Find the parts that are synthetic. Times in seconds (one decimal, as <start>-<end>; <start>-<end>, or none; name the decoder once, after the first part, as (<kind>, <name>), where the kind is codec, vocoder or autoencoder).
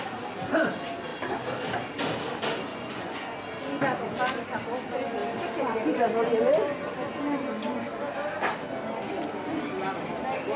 2.7-3.4 (vocoder, Vocos)